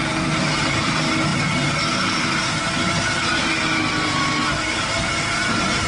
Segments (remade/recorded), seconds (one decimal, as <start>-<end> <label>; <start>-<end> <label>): 0.0-5.9 recorded